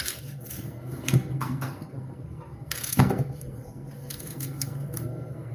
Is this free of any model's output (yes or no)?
no